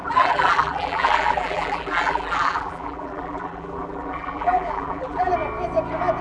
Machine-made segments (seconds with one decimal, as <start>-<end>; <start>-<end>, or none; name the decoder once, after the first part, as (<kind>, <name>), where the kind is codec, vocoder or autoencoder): 0.0-5.3 (vocoder, BigVGAN v2)